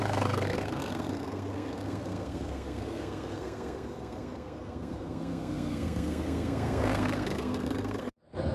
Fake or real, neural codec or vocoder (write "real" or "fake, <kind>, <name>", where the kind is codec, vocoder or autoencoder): fake, codec, SNAC